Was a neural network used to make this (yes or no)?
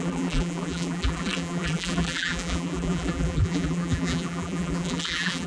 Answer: yes